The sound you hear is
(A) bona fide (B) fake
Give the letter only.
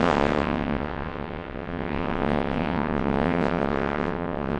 B